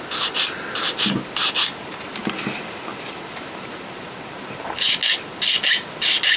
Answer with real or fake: real